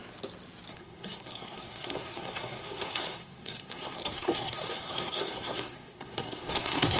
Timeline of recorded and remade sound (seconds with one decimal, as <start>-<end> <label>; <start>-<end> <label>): 0.0-0.7 recorded; 0.7-7.0 remade